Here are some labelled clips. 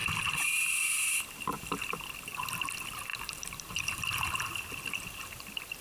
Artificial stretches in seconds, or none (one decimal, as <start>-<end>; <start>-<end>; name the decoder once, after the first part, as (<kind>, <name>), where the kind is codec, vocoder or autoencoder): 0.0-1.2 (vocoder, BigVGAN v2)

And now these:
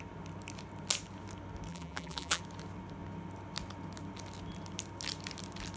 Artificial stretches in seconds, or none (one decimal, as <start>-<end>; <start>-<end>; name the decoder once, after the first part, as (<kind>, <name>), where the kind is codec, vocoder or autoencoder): 1.7-2.4 (vocoder, BigVGAN v2)

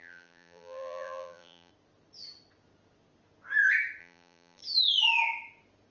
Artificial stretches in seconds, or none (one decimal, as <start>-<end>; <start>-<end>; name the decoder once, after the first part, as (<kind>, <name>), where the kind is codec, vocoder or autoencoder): 0.0-1.7 (vocoder, BigVGAN v2); 4.0-4.6

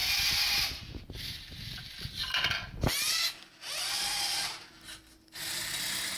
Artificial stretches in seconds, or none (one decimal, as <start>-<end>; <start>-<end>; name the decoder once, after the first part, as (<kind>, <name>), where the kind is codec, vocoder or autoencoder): none